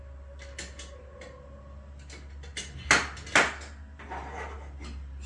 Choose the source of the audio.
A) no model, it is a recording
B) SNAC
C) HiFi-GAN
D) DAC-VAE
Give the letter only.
A